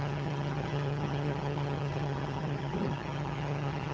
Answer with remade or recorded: remade